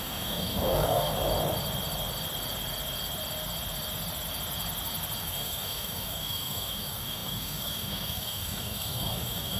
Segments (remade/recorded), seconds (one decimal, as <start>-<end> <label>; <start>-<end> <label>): 0.0-1.1 remade; 1.1-5.2 recorded; 5.2-9.6 remade